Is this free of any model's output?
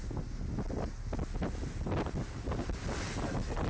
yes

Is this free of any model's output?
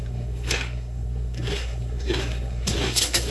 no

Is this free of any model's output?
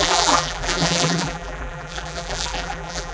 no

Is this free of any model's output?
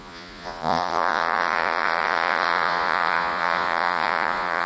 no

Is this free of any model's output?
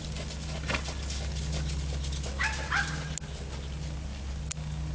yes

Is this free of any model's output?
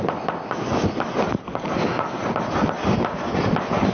yes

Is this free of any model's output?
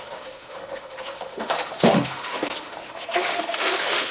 no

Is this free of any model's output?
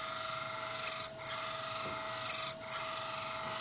yes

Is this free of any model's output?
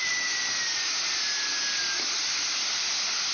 yes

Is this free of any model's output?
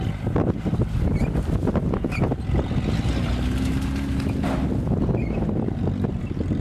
yes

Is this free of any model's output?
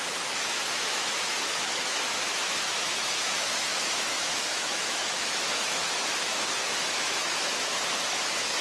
no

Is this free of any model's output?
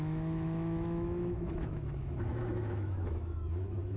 no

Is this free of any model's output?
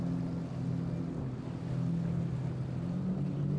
yes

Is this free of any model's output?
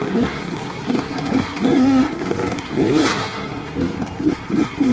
no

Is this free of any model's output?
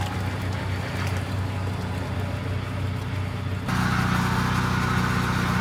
yes